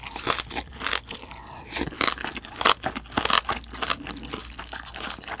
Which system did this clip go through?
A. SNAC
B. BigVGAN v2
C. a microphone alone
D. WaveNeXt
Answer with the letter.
C